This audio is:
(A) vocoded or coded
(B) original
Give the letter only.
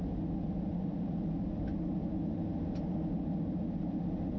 B